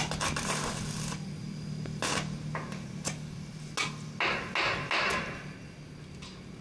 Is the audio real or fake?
real